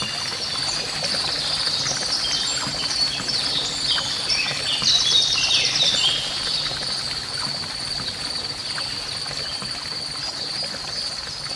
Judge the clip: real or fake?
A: real